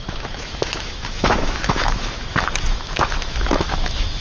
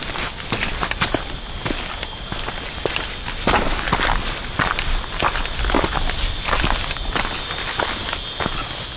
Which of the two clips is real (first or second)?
second